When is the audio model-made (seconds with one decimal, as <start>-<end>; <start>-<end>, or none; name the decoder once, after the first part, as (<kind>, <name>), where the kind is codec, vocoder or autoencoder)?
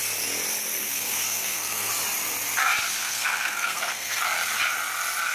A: 0.8-1.9 (codec, SNAC); 3.0-4.2